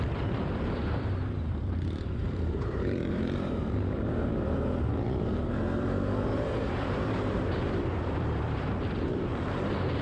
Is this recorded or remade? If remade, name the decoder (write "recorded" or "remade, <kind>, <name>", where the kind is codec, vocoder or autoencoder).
remade, vocoder, BigVGAN v2